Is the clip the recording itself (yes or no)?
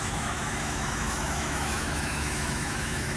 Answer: no